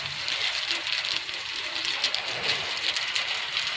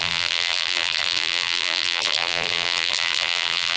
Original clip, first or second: first